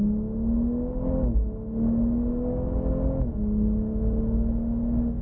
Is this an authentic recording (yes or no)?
yes